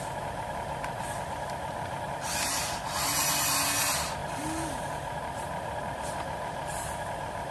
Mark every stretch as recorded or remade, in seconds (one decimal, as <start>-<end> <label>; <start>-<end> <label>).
0.0-7.5 recorded

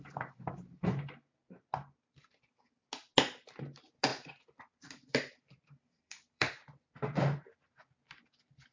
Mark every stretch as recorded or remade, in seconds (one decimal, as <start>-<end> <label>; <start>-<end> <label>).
0.0-4.1 recorded; 4.1-7.2 remade; 7.2-8.7 recorded

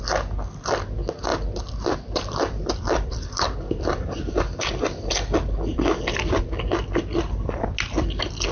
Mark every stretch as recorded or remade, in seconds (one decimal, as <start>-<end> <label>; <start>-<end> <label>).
0.0-1.3 recorded; 1.3-6.4 remade; 6.4-8.5 recorded

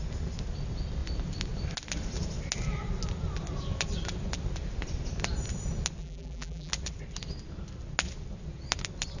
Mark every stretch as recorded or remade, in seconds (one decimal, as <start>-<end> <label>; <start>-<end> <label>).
0.0-6.0 recorded; 6.0-6.7 remade; 6.7-9.2 recorded

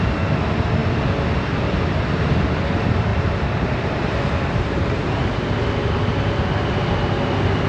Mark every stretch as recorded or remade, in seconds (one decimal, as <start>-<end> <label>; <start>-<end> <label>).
0.0-3.1 recorded; 3.1-5.4 remade; 5.4-7.7 recorded